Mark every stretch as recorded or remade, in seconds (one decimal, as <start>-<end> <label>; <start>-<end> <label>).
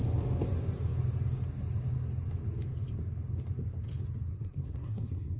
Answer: 0.0-4.3 recorded; 4.3-5.4 remade